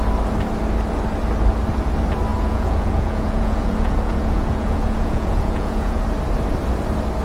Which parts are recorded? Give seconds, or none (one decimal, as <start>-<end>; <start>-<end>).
0.0-2.3; 6.0-7.2